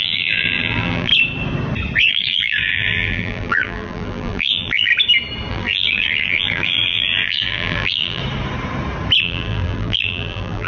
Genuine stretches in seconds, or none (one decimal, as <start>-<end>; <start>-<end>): 1.1-2.1; 4.9-5.5; 8.2-9.2